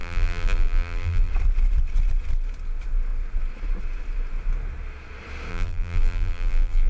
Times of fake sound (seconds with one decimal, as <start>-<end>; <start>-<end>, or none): 0.0-1.3; 5.5-6.9

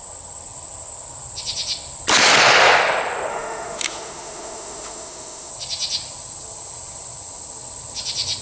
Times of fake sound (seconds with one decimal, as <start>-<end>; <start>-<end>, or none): 3.3-5.5

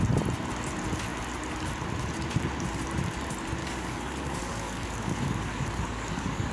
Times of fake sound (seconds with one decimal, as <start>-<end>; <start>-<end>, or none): 3.6-6.5

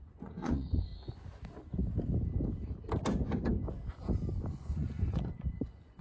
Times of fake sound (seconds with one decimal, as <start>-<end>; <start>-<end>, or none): 0.0-0.9; 4.5-6.0

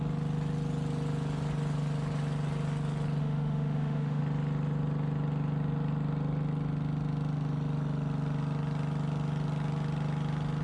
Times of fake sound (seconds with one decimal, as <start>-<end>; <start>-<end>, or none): 3.2-4.2